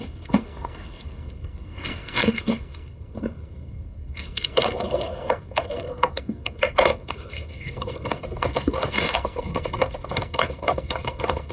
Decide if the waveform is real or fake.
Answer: fake